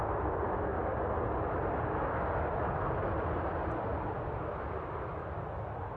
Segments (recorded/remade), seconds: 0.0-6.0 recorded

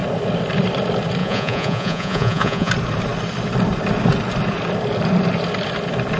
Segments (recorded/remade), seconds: 0.0-1.2 recorded; 1.2-2.7 remade; 2.7-6.2 recorded

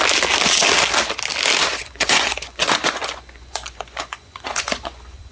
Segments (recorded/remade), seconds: 0.0-1.7 recorded; 1.7-5.3 remade

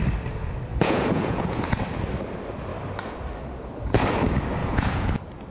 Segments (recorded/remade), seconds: 0.0-0.7 recorded; 0.7-1.6 remade; 1.6-4.6 recorded; 4.6-5.1 remade; 5.1-5.5 recorded